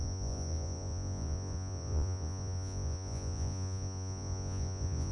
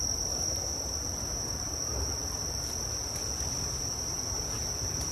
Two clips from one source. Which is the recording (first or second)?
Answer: second